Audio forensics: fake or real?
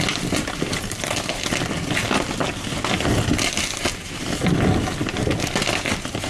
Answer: real